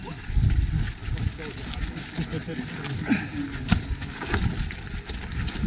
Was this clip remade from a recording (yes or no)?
no